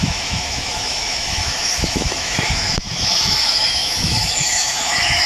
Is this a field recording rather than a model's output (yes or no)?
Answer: no